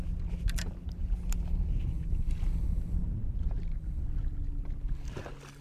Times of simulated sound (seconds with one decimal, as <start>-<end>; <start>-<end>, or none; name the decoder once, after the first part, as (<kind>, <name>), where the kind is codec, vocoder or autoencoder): none